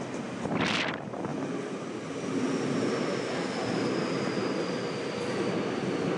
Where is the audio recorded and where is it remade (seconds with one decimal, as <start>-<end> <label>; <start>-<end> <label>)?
0.0-6.2 recorded